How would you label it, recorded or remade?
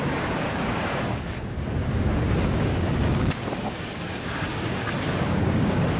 remade